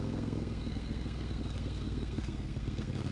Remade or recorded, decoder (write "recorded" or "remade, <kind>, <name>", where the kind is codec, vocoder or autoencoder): remade, codec, SNAC